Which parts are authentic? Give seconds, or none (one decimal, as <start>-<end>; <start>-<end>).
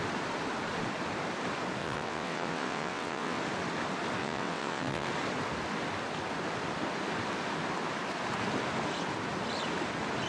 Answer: 0.0-1.8; 3.4-4.2; 5.1-10.3